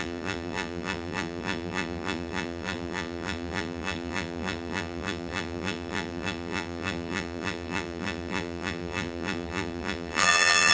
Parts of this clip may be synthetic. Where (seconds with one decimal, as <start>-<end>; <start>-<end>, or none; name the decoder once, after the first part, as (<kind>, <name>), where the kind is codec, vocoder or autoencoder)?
0.0-10.7 (vocoder, BigVGAN v2)